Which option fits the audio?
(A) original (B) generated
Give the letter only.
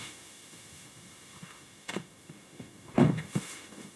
B